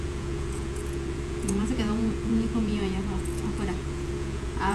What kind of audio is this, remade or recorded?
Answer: remade